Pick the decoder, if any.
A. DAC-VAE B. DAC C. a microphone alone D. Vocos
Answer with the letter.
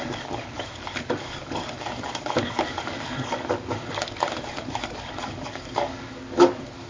B